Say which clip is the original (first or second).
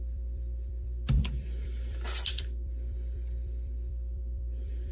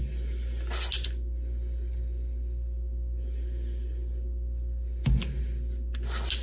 second